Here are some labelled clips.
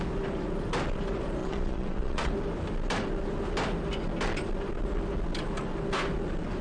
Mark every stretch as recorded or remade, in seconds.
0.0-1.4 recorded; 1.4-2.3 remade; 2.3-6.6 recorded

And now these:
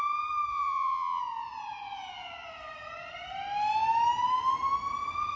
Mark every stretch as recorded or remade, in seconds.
0.0-0.5 recorded; 0.5-1.2 remade; 1.2-5.4 recorded